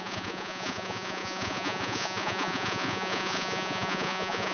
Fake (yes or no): yes